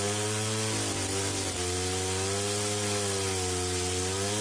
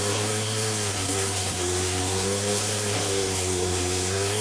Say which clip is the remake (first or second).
second